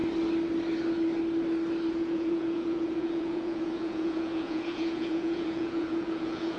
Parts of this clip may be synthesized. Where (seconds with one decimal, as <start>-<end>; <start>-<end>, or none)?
1.9-6.6